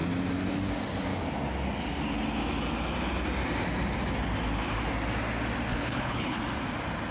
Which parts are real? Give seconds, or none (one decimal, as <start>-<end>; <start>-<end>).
0.0-5.7; 6.4-7.1